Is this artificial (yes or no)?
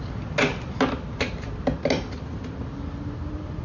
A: no